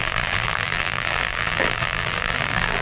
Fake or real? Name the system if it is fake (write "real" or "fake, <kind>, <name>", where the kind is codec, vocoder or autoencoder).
fake, vocoder, BigVGAN v2